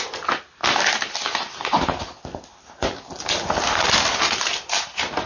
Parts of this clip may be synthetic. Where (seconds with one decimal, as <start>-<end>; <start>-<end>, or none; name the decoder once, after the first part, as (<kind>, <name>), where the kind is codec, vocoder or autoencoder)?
none